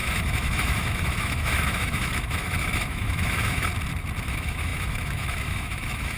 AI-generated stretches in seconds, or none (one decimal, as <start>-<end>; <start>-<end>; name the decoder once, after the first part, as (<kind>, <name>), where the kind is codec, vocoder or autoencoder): 0.0-3.7 (autoencoder, DAC-VAE); 4.2-6.2